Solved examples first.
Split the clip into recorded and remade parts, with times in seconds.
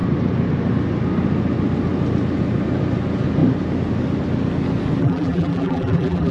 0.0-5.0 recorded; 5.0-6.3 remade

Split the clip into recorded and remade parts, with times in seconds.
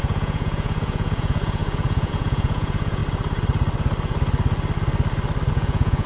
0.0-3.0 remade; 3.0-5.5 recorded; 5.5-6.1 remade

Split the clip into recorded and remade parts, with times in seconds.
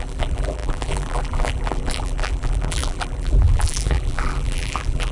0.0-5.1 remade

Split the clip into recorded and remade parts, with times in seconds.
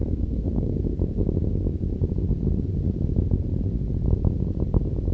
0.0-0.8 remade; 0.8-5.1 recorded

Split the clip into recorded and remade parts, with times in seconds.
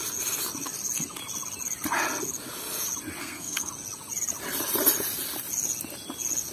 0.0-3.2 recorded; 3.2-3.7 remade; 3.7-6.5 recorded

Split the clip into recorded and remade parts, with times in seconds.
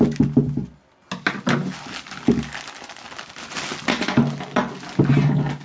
0.0-5.6 recorded